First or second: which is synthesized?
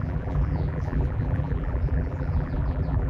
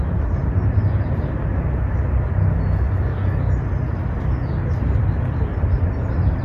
first